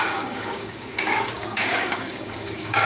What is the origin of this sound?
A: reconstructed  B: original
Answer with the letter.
A